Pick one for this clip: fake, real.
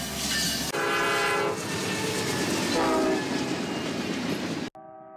real